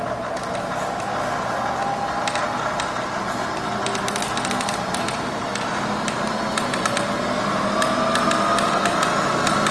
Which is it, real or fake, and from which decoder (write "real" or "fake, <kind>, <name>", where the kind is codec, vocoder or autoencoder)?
real